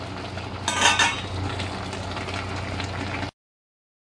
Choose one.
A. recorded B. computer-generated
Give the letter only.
A